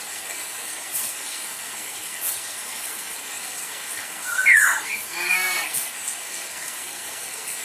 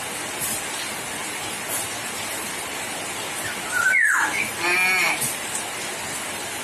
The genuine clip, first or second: second